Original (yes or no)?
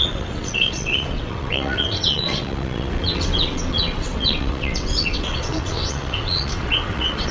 no